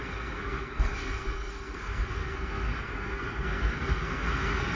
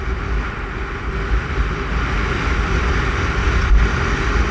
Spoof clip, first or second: first